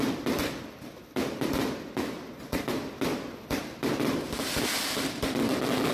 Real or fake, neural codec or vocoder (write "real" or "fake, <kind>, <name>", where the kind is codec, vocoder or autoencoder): real